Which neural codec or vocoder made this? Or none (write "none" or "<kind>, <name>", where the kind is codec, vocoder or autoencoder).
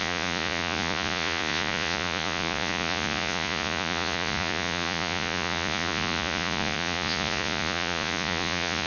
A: vocoder, Vocos